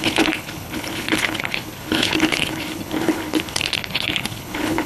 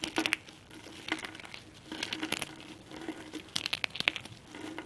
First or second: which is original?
second